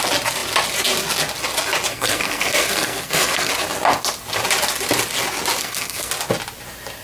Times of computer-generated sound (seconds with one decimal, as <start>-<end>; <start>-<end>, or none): 1.9-3.5; 5.6-6.1